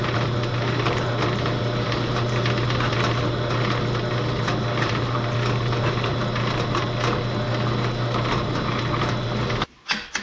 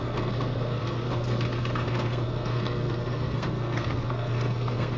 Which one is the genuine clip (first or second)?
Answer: first